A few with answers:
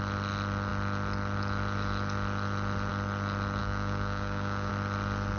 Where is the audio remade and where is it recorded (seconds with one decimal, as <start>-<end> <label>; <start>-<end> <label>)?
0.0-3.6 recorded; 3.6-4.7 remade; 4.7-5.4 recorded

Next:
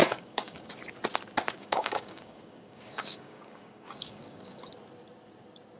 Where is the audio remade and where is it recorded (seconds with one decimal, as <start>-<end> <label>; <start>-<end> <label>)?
0.0-0.7 remade; 0.7-1.6 recorded; 1.6-4.6 remade; 4.6-5.8 recorded

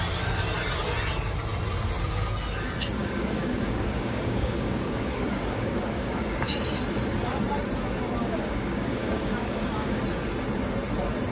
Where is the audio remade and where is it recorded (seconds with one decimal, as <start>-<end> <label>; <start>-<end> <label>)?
0.0-3.0 recorded; 3.0-6.8 remade; 6.8-8.2 recorded; 8.2-10.0 remade; 10.0-11.3 recorded

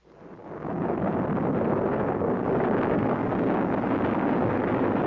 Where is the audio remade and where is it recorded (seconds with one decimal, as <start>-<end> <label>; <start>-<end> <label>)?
0.0-0.4 recorded; 0.4-0.9 remade; 0.9-1.9 recorded; 1.9-4.5 remade; 4.5-5.1 recorded

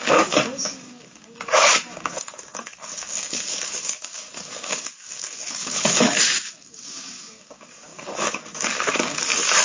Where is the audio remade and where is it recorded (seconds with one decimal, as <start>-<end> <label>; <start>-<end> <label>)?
0.0-9.6 remade

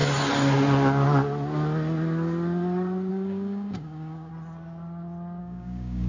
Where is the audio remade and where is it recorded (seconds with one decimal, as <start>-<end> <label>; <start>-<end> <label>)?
0.0-3.1 recorded; 3.1-4.3 remade; 4.3-5.4 recorded; 5.4-6.1 remade